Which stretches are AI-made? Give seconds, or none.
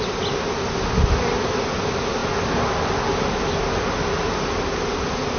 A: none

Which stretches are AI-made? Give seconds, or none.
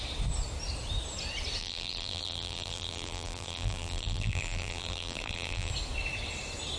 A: 1.6-5.7 (vocoder, BigVGAN v2)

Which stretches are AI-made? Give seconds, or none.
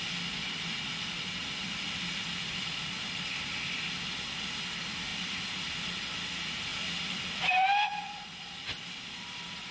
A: 1.4-2.8 (vocoder, BigVGAN v2); 5.1-5.7; 6.7-9.7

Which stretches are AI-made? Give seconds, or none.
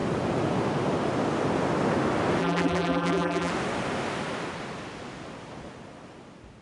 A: 2.4-3.5 (vocoder, BigVGAN v2)